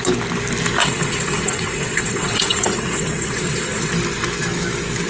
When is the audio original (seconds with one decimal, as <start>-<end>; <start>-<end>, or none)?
0.0-0.8; 3.9-5.1